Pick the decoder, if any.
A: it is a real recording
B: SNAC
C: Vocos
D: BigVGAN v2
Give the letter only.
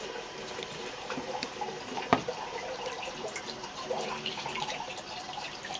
D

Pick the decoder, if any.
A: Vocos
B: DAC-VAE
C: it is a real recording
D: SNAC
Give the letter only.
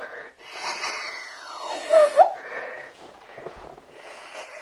A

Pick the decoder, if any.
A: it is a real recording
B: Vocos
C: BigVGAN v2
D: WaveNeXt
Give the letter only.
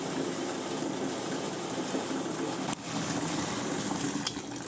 A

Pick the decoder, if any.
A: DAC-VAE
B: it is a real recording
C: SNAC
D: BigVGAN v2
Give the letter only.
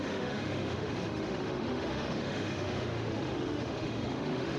A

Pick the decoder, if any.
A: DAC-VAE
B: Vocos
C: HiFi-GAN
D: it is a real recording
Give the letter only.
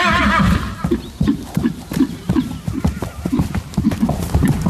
D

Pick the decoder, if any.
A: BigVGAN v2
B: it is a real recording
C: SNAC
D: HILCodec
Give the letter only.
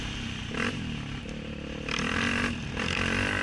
B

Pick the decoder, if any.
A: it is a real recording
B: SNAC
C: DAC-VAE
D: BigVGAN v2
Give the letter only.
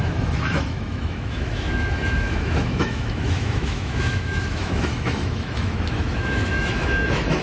C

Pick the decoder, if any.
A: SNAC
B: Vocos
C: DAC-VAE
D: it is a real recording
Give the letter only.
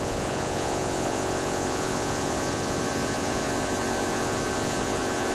B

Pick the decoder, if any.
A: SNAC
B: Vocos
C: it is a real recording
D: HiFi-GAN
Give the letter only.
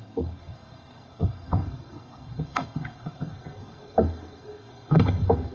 A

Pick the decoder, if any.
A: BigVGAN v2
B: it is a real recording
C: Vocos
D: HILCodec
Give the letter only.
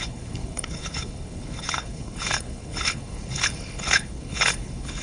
D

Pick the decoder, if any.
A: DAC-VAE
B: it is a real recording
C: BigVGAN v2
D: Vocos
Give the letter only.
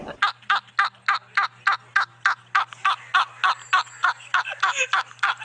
B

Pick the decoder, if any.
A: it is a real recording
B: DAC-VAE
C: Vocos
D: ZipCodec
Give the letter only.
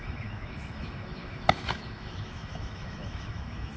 B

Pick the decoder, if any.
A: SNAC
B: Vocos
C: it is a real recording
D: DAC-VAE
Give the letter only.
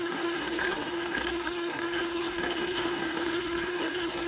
A